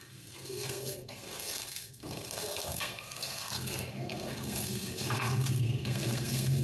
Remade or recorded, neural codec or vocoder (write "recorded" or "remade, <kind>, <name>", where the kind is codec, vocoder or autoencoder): remade, codec, SNAC